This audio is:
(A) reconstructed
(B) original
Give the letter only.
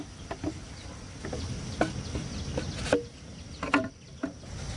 B